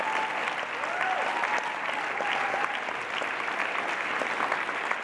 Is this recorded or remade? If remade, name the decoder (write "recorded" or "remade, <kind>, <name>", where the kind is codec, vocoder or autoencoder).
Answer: recorded